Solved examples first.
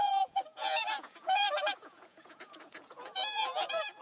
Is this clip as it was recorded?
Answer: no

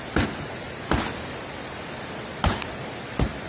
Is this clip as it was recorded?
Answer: yes